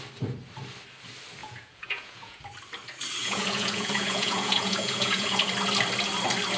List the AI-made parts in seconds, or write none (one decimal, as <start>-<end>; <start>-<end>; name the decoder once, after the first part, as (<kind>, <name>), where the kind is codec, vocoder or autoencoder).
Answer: 1.4-2.4 (vocoder, Vocos); 3.2-5.5